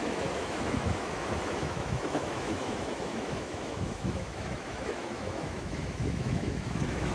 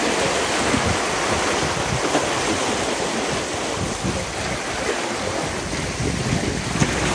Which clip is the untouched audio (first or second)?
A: second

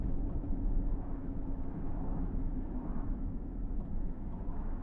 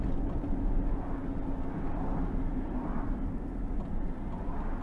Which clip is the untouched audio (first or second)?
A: second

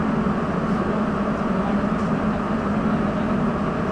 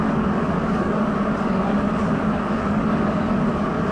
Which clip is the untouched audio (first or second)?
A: first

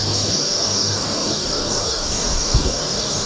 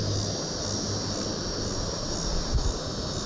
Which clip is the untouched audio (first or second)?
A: second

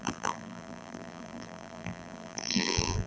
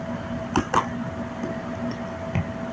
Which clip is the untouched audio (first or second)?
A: second